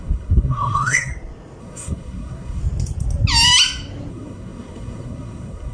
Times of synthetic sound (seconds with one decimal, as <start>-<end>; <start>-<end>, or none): 0.0-1.1; 1.6-2.6; 4.1-5.7